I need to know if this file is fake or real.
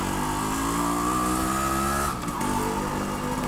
real